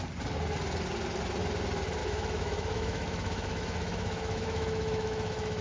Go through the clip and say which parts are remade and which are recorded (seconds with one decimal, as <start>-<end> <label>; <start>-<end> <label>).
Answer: 0.0-2.0 recorded; 2.0-5.6 remade